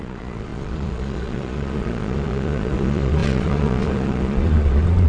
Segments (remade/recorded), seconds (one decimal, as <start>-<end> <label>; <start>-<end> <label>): 0.0-5.1 remade